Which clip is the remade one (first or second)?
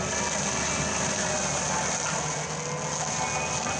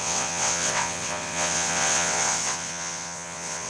second